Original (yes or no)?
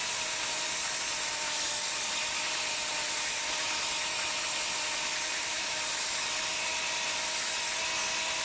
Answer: yes